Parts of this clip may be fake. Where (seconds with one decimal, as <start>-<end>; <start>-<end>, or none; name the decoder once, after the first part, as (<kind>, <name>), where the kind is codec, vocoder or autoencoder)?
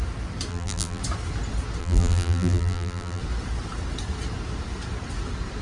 0.5-1.0 (vocoder, BigVGAN v2); 1.8-3.2